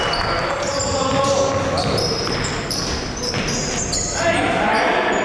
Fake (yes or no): no